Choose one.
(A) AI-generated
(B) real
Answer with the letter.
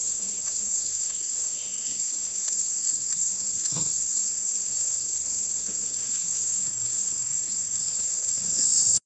A